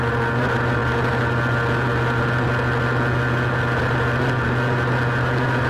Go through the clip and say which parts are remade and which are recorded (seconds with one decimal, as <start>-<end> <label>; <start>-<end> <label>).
0.0-5.7 recorded